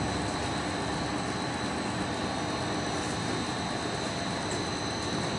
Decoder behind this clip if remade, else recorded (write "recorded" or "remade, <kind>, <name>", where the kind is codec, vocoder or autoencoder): recorded